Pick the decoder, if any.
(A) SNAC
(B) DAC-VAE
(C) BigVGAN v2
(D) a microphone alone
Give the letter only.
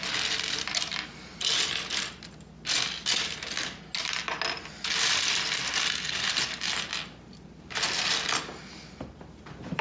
D